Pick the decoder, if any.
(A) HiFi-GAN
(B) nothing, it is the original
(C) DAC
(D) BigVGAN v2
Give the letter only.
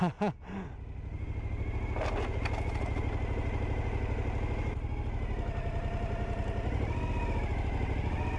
B